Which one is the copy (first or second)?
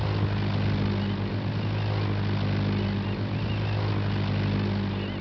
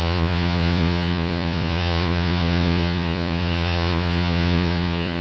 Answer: second